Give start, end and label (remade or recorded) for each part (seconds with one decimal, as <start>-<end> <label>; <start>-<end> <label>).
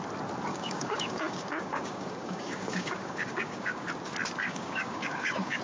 0.0-0.5 recorded; 0.5-3.9 remade; 3.9-4.4 recorded; 4.4-5.6 remade